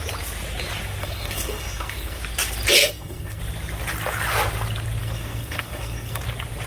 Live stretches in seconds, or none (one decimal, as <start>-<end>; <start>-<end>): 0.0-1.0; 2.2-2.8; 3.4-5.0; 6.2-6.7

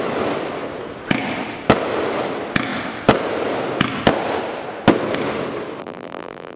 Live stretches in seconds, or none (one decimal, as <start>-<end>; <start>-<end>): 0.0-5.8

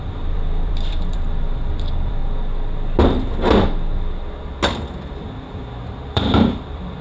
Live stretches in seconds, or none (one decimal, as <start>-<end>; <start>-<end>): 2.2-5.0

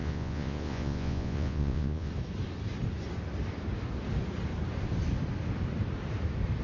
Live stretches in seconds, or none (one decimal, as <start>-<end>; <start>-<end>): 2.1-6.6